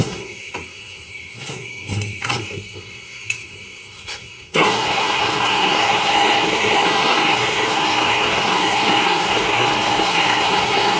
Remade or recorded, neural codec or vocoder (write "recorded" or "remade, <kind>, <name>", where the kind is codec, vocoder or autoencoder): remade, codec, SNAC